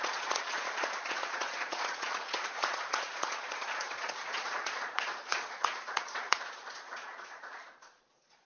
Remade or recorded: remade